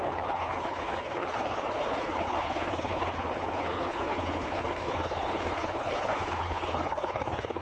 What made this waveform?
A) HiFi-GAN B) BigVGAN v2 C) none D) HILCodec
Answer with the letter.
D